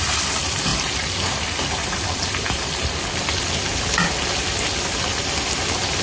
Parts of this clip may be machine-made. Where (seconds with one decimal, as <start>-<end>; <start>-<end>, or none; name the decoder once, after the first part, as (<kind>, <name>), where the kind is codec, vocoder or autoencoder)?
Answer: none